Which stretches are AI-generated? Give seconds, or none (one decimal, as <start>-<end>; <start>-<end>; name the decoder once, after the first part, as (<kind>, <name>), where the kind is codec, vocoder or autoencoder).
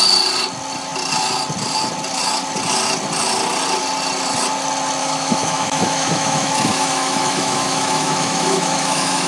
5.0-9.3 (autoencoder, DAC-VAE)